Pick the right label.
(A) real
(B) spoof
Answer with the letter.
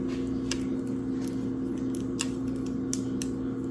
A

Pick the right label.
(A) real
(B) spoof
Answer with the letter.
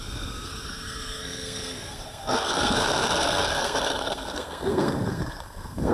B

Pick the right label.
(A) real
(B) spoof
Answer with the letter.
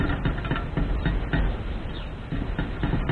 A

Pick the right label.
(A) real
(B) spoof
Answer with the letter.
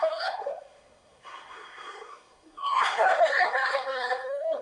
B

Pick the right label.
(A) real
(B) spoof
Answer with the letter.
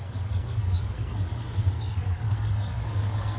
B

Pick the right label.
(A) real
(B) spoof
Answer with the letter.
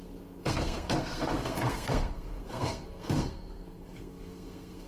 B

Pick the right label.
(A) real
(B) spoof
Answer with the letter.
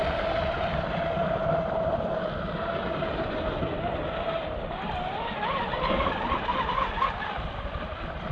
A